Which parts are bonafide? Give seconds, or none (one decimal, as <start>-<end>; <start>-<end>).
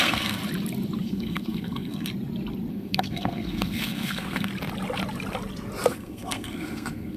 0.4-1.0; 2.1-2.7; 4.5-5.9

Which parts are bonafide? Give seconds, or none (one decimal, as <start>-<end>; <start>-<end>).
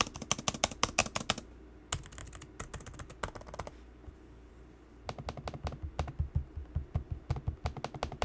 0.0-8.2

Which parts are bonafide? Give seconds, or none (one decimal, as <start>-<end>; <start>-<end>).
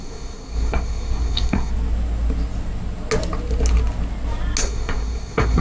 1.7-4.6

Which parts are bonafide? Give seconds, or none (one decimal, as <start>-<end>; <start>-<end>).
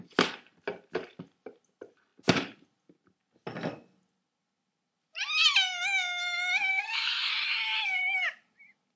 0.0-6.7; 7.3-9.0